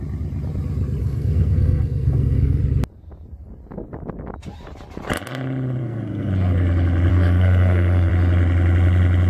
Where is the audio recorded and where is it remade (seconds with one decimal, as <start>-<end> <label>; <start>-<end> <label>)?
0.0-1.0 recorded; 1.0-2.6 remade; 2.6-5.8 recorded; 5.8-6.3 remade; 6.3-7.1 recorded; 7.1-8.1 remade; 8.1-9.3 recorded